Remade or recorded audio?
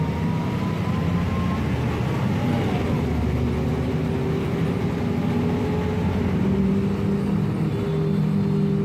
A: recorded